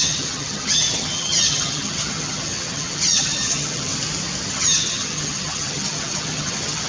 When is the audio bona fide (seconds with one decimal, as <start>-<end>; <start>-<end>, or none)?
3.9-4.5